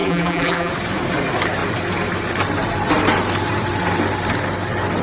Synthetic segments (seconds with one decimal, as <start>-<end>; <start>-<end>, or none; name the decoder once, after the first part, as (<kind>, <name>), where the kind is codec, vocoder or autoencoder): 0.0-0.7 (vocoder, BigVGAN v2)